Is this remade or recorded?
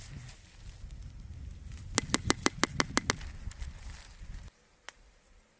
recorded